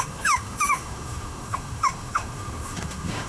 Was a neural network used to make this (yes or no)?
yes